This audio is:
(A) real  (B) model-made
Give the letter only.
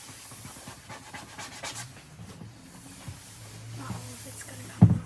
A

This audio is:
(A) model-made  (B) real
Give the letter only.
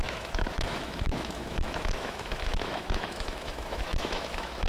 A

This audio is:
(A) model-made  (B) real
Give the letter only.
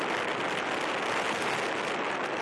B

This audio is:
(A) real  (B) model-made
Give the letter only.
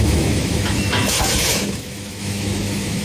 B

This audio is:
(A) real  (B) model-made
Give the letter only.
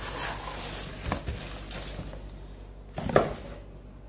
A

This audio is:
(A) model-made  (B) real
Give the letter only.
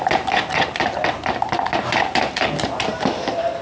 B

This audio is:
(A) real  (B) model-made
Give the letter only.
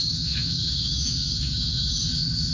B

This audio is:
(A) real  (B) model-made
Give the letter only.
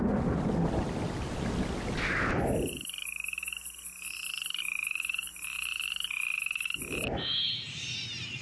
A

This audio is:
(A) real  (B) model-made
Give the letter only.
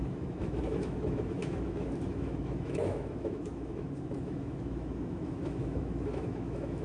B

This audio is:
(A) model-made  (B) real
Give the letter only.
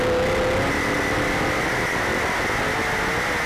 B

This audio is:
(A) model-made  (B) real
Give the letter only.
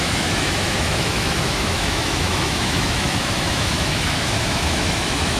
A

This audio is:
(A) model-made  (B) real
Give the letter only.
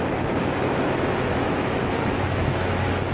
A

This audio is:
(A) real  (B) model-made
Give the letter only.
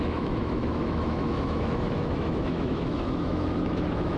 B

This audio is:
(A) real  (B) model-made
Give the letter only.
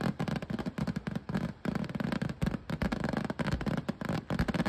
A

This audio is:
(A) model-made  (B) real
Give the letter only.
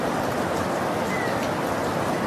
B